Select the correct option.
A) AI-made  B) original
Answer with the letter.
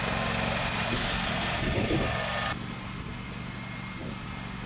B